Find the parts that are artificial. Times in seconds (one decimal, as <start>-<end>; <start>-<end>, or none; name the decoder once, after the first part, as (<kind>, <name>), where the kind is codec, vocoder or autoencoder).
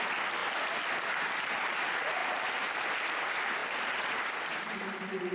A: none